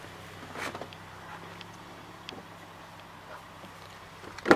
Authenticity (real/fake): real